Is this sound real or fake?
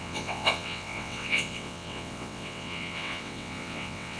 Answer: fake